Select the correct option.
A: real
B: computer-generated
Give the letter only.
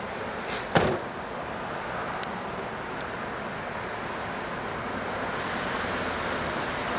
A